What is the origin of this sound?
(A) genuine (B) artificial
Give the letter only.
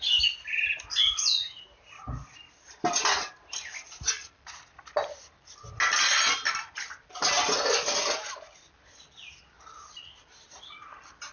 A